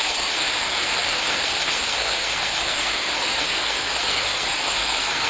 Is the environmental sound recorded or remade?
remade